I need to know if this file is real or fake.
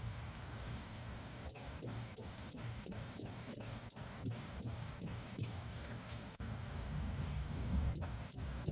fake